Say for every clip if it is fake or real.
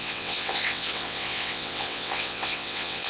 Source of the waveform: fake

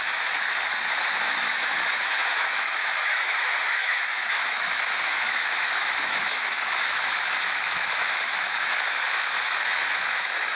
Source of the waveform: fake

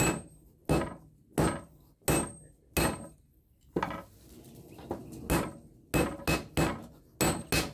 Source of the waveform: real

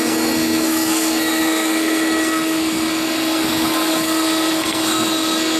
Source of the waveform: fake